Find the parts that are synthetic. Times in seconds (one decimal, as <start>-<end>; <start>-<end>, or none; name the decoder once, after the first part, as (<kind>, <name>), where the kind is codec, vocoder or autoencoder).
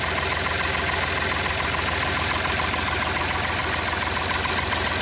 none